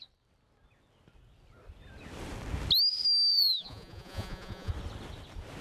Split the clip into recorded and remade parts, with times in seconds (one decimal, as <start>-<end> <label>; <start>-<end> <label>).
0.0-3.3 recorded; 3.3-4.7 remade; 4.7-5.6 recorded